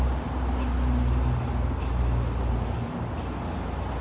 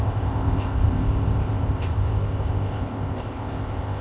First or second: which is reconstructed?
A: second